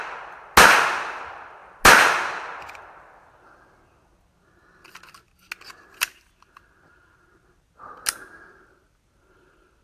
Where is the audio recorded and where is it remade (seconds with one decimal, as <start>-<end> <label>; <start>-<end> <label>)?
0.0-9.8 recorded